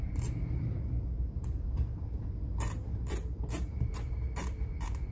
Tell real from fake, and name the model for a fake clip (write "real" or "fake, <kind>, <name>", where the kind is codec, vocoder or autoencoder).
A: fake, vocoder, BigVGAN v2